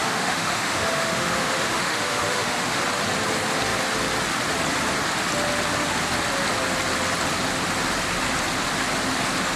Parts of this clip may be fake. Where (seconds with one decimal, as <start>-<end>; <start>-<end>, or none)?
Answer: 0.0-2.8